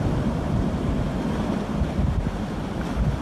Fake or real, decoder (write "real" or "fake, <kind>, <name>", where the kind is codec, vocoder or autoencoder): real